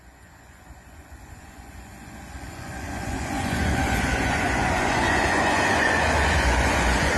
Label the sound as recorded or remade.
remade